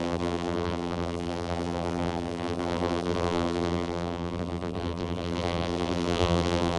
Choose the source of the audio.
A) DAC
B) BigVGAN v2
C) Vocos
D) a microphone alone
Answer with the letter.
B